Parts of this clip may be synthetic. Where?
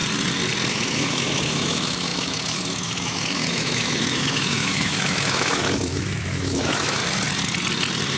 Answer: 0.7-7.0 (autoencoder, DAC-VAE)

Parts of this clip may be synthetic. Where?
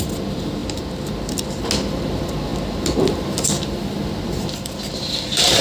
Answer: none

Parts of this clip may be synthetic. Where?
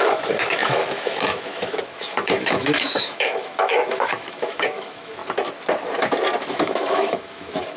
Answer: 0.0-5.2 (autoencoder, DAC-VAE); 6.5-7.8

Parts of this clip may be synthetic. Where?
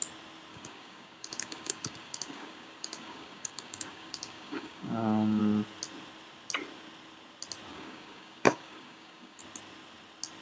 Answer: 0.5-5.4 (codec, DAC); 7.7-9.4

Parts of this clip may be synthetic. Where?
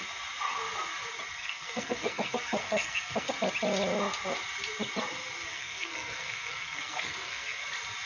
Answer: 1.4-3.3 (codec, SNAC); 5.5-7.6